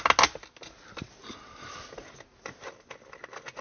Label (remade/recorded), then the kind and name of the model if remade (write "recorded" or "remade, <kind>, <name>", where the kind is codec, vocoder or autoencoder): recorded